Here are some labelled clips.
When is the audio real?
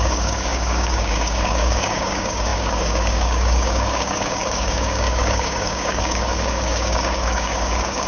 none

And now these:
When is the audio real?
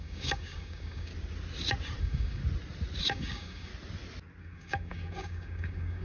1.1-2.0; 2.4-3.0; 3.7-4.4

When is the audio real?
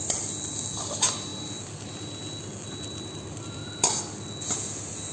0.0-5.1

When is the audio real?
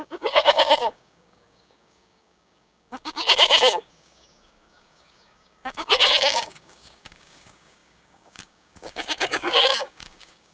none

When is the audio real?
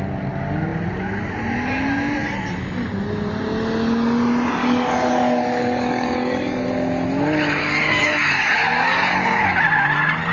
0.0-4.6; 6.7-7.6; 9.4-10.3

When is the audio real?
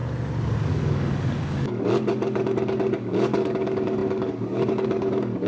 0.0-0.7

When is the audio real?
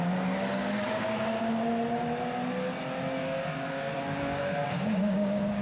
0.0-0.6; 1.4-3.2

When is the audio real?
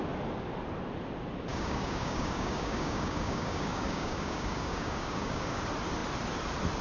0.0-1.5; 5.6-6.8